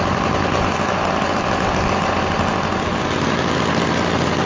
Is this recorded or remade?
recorded